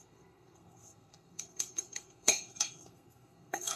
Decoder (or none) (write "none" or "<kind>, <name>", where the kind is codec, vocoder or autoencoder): codec, SNAC